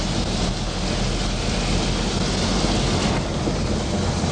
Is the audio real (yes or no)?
yes